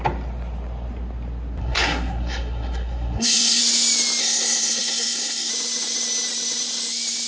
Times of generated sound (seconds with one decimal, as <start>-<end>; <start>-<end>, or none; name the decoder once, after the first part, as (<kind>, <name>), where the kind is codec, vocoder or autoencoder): 1.6-3.6 (codec, SNAC); 4.2-5.5

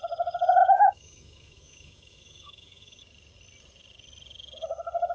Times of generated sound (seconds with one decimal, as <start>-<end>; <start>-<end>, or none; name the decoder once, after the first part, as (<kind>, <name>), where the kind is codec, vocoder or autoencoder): 0.6-3.0 (autoencoder, DAC-VAE)

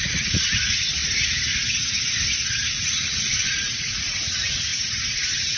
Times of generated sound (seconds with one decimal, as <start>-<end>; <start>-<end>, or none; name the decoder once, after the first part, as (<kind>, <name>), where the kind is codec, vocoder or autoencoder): 0.0-1.0 (vocoder, Vocos); 2.7-5.6